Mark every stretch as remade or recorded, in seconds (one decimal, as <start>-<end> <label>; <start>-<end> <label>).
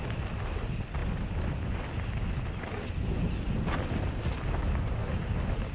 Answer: 0.0-5.7 recorded